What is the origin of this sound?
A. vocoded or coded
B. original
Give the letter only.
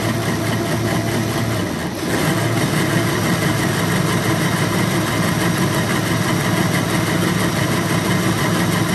B